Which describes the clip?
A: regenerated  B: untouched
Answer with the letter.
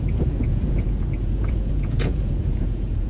A